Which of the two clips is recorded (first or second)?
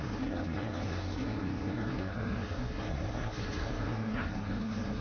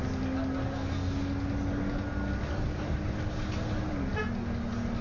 second